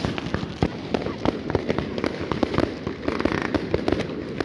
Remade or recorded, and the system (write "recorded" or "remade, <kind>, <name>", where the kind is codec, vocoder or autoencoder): recorded